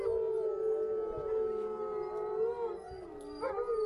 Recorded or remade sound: recorded